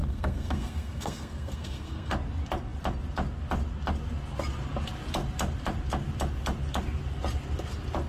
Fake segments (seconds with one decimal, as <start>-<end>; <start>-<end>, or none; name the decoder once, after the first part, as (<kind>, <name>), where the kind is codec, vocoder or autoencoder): 0.0-2.1 (codec, SNAC)